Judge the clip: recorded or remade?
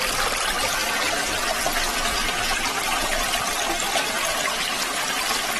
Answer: recorded